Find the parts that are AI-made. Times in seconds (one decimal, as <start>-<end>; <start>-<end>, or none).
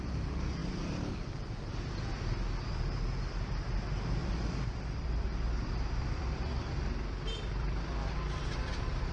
4.2-9.1